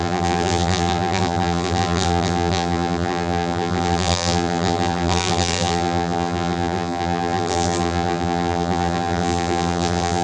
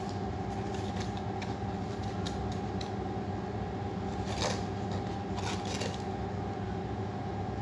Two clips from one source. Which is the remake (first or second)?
first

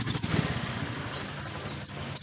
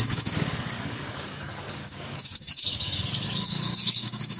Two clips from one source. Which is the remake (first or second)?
second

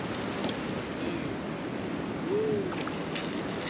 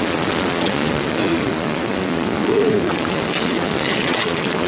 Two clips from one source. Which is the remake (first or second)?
second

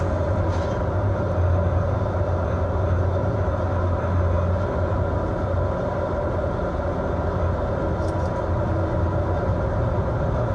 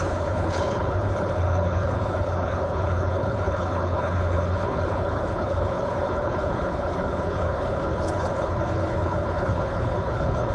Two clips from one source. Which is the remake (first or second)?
second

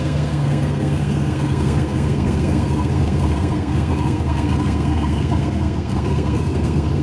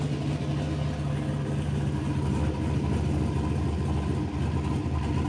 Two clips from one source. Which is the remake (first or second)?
first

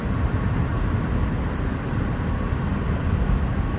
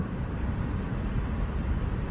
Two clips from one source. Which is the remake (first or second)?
second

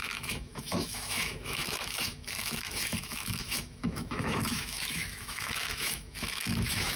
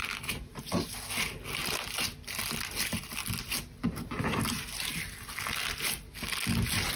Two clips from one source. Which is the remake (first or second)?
first